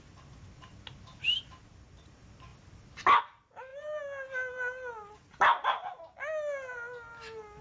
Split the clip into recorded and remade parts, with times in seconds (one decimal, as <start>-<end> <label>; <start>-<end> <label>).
0.0-7.6 recorded